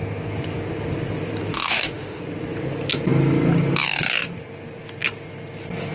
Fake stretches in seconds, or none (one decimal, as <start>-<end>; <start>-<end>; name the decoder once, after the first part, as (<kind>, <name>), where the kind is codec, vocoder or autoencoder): 1.5-2.2 (autoencoder, DAC-VAE)